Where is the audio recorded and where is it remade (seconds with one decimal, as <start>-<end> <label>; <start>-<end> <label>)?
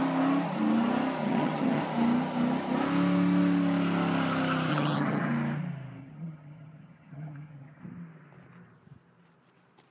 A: 0.0-1.2 recorded; 1.2-1.8 remade; 1.8-4.7 recorded; 4.7-5.3 remade; 5.3-6.0 recorded; 6.0-7.8 remade; 7.8-9.9 recorded